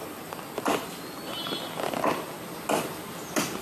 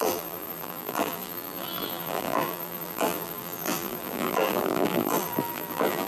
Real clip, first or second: first